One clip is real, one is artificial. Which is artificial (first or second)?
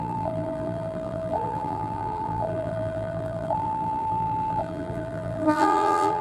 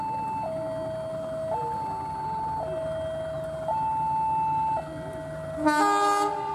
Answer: first